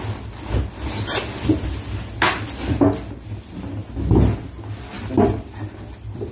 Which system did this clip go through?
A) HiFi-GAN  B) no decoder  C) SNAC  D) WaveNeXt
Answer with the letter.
B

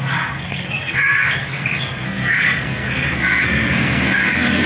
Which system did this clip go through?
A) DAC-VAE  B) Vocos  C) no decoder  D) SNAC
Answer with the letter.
D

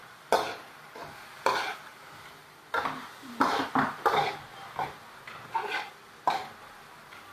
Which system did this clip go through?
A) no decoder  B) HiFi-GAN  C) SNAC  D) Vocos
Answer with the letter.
A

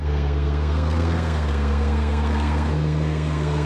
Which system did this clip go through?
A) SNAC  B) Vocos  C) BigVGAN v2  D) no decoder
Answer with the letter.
A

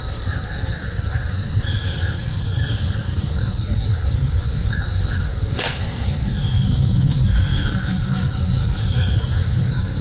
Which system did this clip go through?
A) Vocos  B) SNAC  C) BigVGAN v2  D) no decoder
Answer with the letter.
B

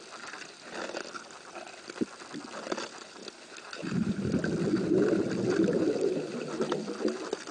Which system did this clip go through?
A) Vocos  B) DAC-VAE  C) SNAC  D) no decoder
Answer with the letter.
D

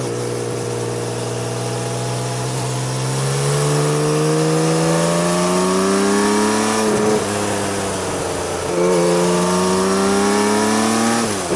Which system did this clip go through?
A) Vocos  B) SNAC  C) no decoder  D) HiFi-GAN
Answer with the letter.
C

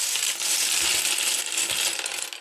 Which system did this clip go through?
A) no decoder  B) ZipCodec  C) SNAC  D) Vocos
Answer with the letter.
A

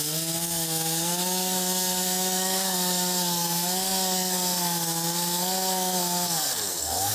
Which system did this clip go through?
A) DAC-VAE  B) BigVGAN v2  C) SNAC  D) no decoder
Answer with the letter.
C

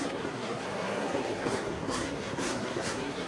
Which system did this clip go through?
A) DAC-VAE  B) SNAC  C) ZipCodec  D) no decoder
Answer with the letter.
B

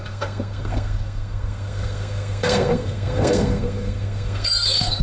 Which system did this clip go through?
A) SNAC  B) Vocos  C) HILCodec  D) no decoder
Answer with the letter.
A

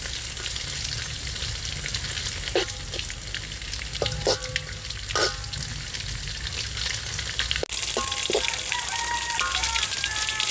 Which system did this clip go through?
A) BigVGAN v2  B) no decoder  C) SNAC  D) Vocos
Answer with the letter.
B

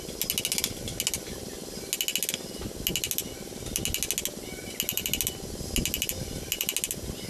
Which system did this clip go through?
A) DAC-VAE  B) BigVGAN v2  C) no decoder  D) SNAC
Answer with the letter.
C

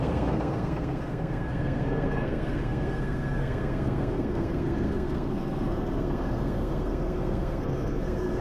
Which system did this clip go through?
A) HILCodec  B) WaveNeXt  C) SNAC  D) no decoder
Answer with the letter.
C